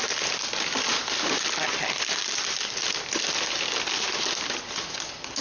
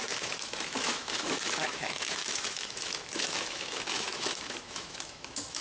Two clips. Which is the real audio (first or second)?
first